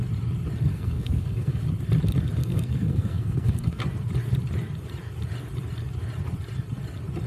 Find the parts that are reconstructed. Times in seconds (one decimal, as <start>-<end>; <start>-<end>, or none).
0.7-1.6; 2.4-3.8